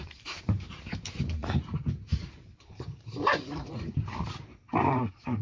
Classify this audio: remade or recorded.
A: remade